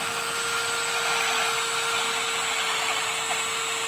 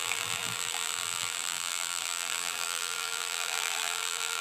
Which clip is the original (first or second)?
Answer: first